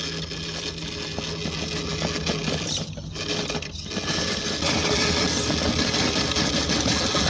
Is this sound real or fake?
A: real